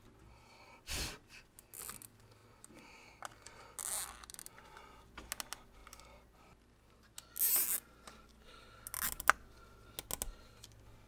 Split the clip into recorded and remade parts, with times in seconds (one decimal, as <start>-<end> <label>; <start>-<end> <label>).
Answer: 0.0-11.1 recorded